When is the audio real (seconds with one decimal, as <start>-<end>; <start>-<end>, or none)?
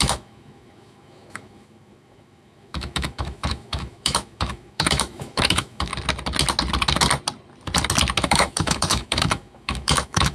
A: 5.9-8.2